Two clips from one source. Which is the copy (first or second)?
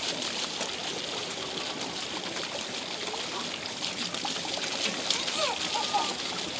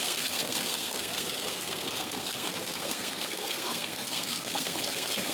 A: second